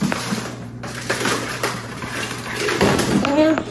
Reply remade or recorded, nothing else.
remade